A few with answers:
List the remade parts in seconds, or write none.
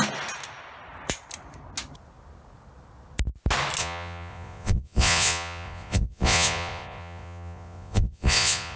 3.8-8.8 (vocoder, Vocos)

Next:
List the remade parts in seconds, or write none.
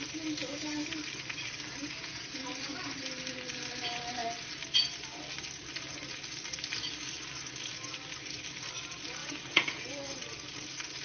1.8-2.4 (vocoder, Vocos); 9.2-9.9